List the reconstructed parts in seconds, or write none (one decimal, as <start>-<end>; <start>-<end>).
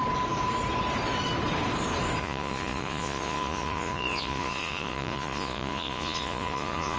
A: 2.2-7.0